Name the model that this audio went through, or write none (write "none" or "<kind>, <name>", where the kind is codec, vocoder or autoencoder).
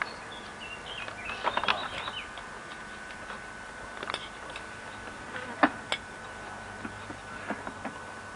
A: none